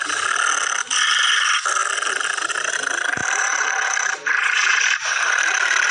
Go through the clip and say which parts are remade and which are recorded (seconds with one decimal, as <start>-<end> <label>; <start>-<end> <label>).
0.0-3.2 recorded; 3.2-5.9 remade